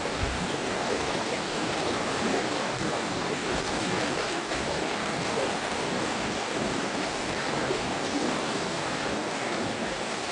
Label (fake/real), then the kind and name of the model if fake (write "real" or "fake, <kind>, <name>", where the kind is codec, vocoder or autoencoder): fake, codec, DAC